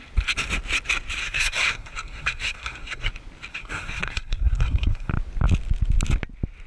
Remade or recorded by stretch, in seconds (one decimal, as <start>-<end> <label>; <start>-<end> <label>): 0.0-1.2 recorded; 1.2-3.1 remade; 3.1-3.5 recorded; 3.5-5.1 remade; 5.1-6.7 recorded